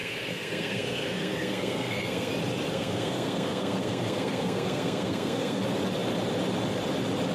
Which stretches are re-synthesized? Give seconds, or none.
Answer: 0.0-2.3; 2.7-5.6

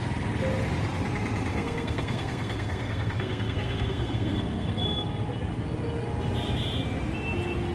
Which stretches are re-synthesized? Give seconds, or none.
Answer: 1.5-4.8

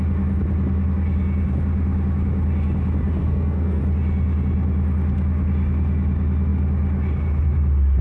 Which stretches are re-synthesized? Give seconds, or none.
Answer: 3.2-3.8

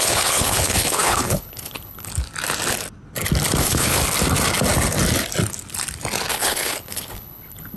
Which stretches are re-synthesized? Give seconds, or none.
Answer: 0.0-2.1; 3.6-4.0; 6.3-7.8

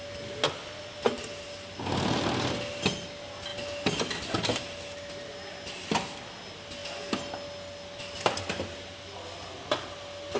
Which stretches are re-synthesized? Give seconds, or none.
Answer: none

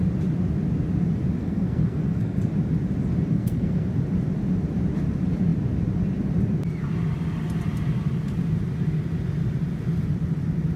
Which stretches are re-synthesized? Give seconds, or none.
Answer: 1.4-2.5; 3.3-3.9